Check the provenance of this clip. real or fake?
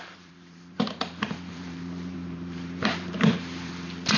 fake